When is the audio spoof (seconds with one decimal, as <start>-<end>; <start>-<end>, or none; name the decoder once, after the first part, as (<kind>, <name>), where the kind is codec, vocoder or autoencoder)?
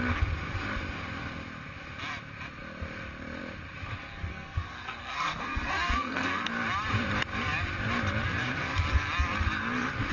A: 4.3-6.5 (codec, SNAC)